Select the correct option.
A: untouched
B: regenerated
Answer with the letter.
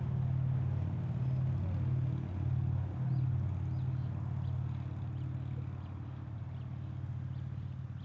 A